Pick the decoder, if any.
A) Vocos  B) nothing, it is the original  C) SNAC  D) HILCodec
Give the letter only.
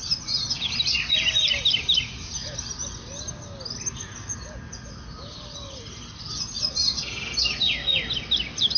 B